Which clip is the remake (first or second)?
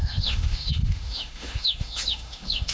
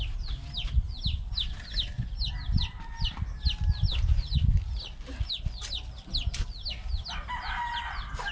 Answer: first